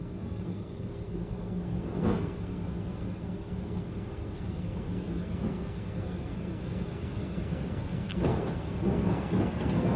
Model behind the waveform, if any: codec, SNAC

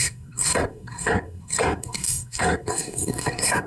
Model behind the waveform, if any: codec, SNAC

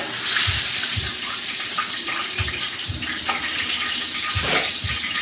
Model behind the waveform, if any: none